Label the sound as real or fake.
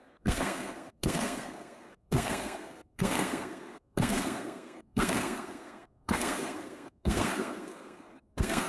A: fake